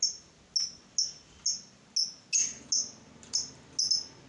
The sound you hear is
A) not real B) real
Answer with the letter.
B